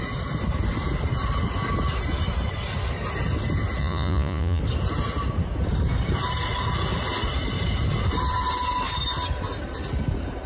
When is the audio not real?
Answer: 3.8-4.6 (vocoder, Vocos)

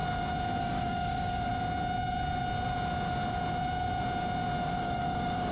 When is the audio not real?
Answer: 0.6-1.5 (codec, DAC); 4.8-5.5

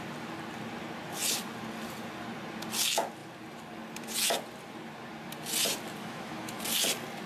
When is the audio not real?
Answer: 6.0-6.6 (autoencoder, DAC-VAE)

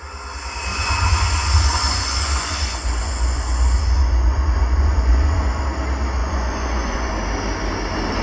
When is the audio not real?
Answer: 0.7-5.6 (vocoder, Vocos); 6.2-7.1

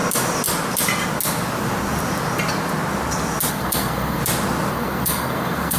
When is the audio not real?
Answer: 3.5-4.2 (codec, SNAC); 4.7-5.8

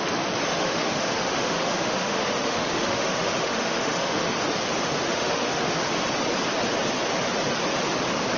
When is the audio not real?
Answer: 0.5-4.4 (autoencoder, DAC-VAE); 5.1-6.0

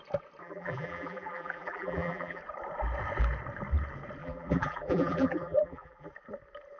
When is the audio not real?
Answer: 0.4-2.4 (vocoder, BigVGAN v2); 4.2-6.1